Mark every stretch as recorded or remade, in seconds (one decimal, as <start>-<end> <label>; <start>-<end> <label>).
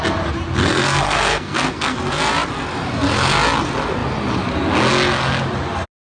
0.0-0.6 recorded; 0.6-2.0 remade; 2.0-6.0 recorded